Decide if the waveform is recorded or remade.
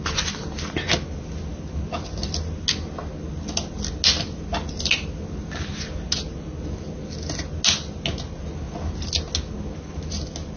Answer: recorded